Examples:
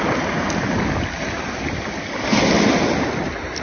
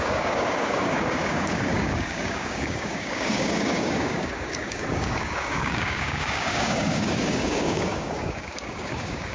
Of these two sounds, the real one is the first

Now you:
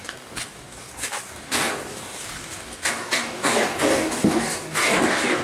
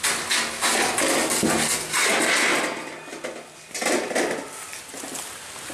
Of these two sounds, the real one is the second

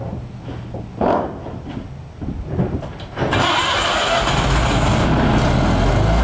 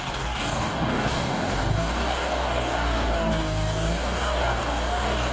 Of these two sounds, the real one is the first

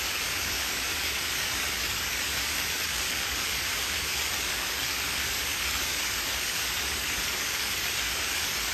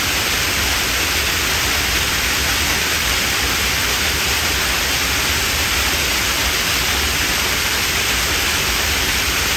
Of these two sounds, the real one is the second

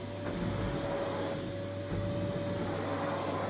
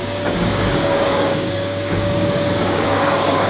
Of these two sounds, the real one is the first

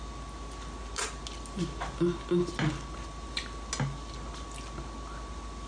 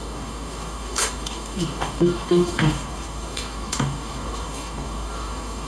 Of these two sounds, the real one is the first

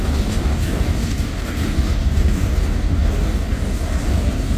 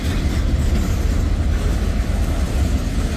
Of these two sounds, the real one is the second